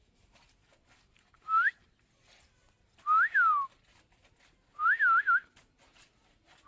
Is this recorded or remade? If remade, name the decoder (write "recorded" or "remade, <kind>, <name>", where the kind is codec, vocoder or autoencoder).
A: recorded